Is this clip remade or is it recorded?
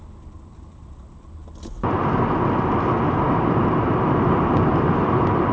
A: recorded